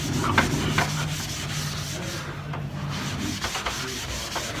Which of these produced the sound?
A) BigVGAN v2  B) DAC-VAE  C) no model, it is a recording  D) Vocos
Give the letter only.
C